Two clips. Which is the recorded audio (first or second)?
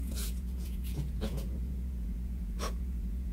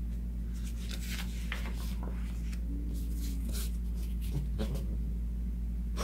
second